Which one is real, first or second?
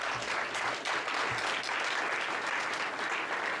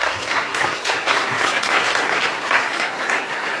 first